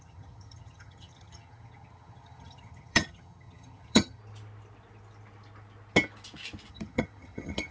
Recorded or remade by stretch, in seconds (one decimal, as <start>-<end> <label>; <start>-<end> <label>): 0.0-4.2 remade; 4.2-6.7 recorded; 6.7-7.7 remade